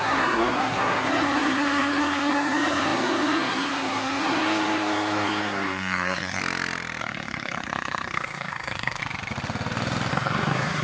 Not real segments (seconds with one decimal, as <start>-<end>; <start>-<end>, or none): 0.0-6.4; 7.0-9.0; 10.1-10.8